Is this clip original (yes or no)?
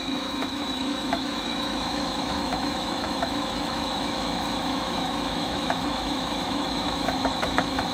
no